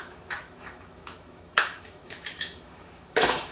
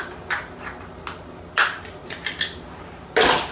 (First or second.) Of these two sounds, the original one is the second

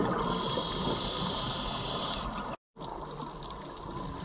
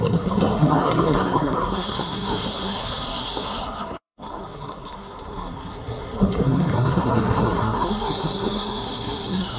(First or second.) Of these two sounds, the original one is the first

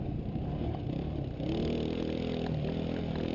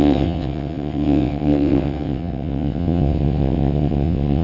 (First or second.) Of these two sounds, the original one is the first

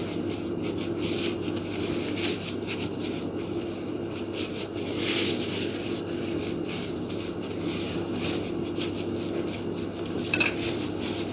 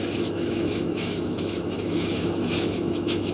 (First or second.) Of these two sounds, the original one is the first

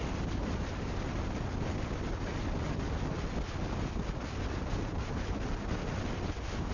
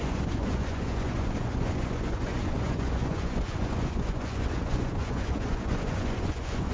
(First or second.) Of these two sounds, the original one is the first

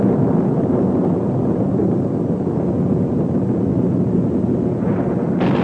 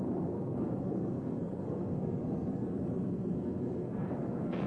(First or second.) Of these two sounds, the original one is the first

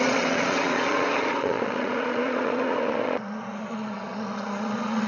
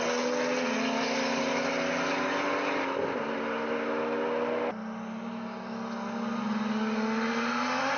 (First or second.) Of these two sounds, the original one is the second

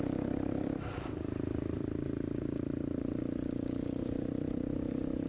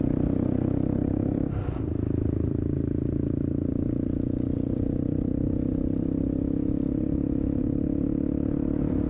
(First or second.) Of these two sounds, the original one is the second